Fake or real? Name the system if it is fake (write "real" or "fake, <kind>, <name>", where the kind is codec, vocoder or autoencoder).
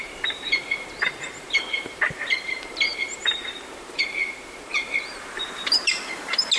fake, vocoder, BigVGAN v2